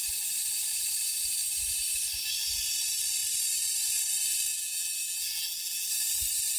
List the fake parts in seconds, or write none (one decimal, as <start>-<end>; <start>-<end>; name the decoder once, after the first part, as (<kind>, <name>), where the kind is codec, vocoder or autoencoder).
4.5-5.9 (vocoder, BigVGAN v2)